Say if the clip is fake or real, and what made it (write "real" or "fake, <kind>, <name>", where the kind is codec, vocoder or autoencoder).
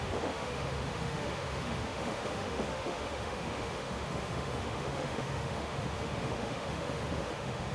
fake, autoencoder, DAC-VAE